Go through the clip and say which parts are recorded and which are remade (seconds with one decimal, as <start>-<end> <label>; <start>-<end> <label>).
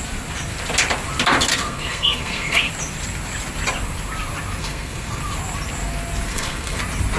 0.0-1.5 recorded; 1.5-2.7 remade; 2.7-4.6 recorded; 4.6-5.2 remade; 5.2-6.3 recorded; 6.3-6.8 remade; 6.8-7.2 recorded